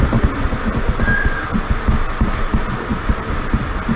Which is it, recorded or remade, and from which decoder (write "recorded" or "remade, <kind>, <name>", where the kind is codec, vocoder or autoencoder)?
recorded